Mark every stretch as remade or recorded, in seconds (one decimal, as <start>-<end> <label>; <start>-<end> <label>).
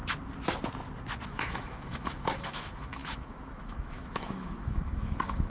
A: 0.0-1.3 recorded; 1.3-5.5 remade